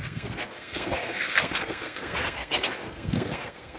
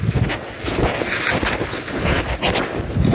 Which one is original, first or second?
second